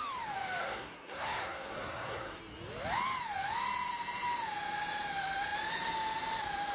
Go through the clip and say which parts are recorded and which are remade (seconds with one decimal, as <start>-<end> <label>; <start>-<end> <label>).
0.0-0.6 recorded; 0.6-2.4 remade; 2.4-6.7 recorded